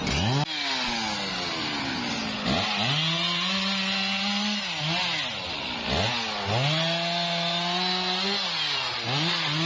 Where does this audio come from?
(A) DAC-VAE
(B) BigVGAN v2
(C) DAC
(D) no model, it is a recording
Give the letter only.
D